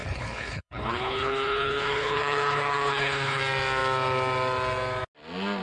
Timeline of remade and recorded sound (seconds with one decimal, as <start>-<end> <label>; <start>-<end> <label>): 0.0-3.4 remade; 3.4-5.6 recorded